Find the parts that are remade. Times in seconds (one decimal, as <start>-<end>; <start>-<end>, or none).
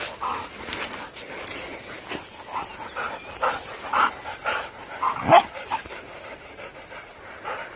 none